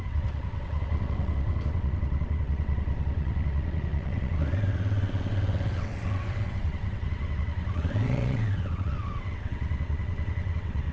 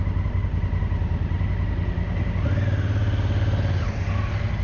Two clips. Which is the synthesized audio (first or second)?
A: first